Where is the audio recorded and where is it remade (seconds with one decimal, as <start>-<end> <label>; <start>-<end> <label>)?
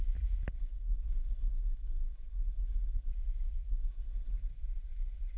0.0-0.5 recorded; 0.5-3.1 remade; 3.1-3.7 recorded; 3.7-4.5 remade; 4.5-5.4 recorded